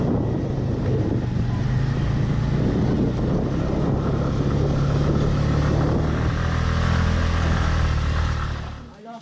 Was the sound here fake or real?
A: real